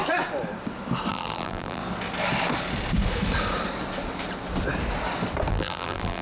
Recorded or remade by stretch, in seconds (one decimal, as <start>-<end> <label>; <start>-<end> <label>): 0.0-1.1 recorded; 1.1-1.8 remade; 1.8-5.5 recorded; 5.5-6.2 remade